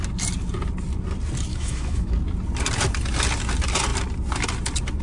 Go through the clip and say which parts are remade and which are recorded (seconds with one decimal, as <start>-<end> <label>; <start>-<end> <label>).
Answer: 0.0-1.5 recorded; 1.5-2.1 remade; 2.1-5.0 recorded